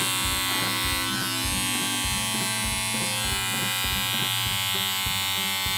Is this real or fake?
real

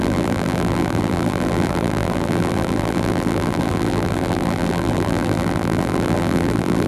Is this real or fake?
fake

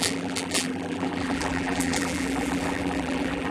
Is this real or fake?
fake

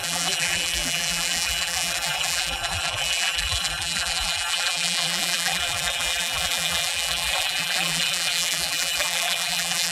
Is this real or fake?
fake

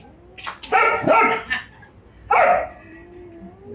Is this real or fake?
real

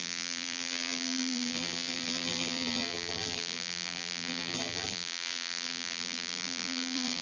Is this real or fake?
fake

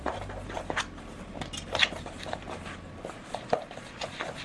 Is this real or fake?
real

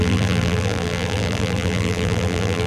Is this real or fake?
fake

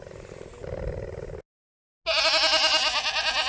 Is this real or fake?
real